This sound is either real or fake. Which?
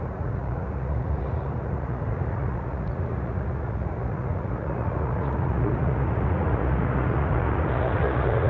fake